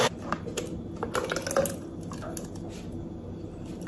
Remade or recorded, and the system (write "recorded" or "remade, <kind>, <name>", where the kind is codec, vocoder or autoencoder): recorded